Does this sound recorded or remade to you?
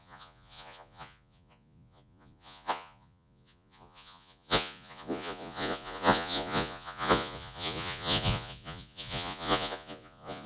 remade